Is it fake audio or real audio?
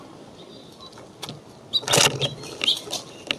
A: real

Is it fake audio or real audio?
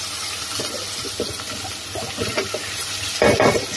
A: real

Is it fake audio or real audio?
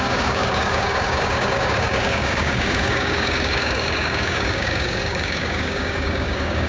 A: fake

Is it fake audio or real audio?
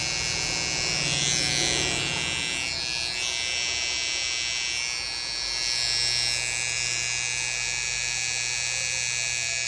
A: real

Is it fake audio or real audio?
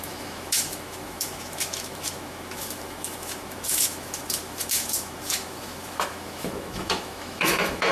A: fake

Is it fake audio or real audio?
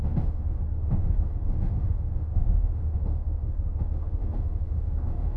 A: fake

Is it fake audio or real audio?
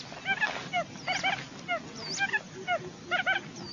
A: real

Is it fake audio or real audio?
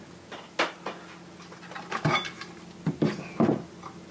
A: real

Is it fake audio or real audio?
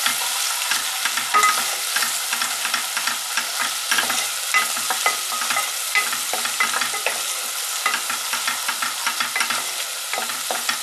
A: real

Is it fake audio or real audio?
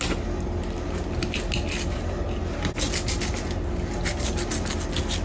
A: real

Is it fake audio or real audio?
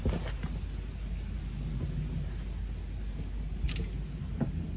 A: real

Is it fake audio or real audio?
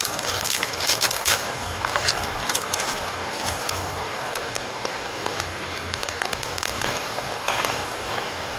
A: fake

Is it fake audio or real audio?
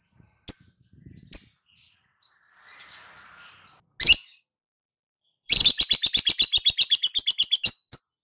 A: real